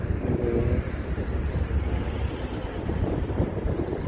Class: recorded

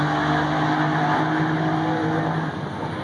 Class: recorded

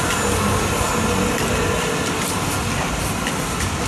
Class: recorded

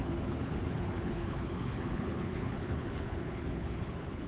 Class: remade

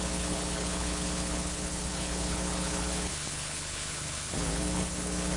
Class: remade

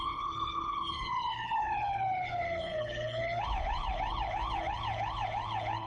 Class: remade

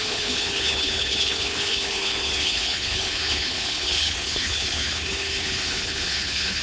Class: remade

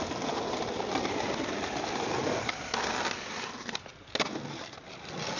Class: recorded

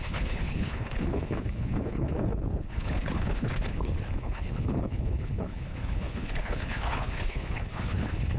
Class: remade